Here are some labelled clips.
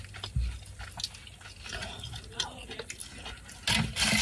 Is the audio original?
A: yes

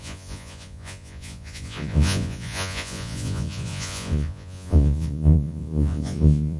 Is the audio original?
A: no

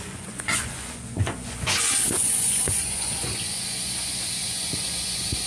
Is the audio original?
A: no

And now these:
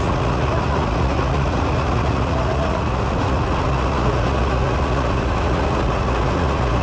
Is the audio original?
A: no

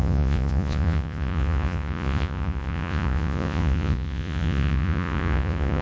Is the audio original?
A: no